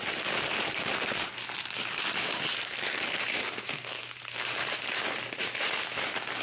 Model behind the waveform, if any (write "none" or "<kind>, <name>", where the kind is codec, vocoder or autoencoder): vocoder, BigVGAN v2